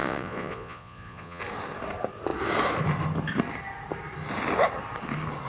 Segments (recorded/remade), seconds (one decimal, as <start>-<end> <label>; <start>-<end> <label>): 0.0-1.4 remade; 1.4-5.5 recorded